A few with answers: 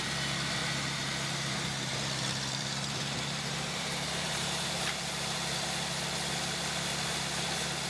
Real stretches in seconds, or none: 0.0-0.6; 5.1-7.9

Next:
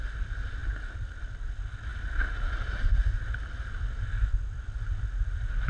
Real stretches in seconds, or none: 0.0-5.7

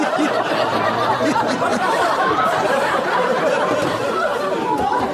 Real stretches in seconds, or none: 0.0-1.7; 3.6-5.1